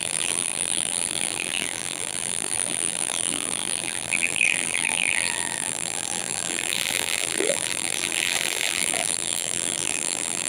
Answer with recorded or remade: remade